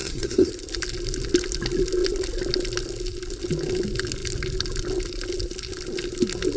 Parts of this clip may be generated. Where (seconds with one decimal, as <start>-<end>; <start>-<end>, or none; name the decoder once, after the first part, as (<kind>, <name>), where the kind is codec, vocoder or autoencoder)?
0.0-0.5 (codec, SNAC)